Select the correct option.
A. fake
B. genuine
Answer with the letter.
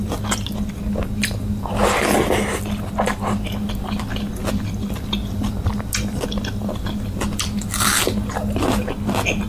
B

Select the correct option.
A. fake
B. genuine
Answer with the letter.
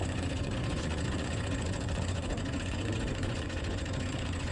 A